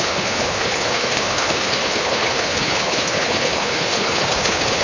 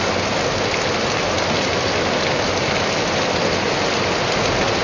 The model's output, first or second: first